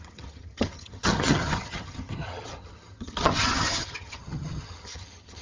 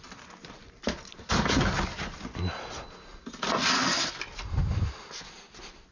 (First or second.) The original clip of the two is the second